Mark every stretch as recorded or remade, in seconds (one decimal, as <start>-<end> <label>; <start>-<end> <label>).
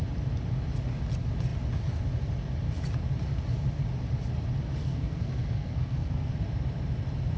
0.0-4.8 recorded; 4.8-6.3 remade; 6.3-7.4 recorded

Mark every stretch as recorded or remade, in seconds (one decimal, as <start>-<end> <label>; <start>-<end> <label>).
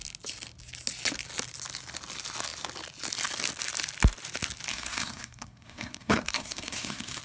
0.0-4.7 recorded; 4.7-7.2 remade